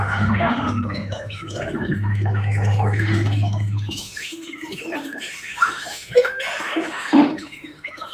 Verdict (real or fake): fake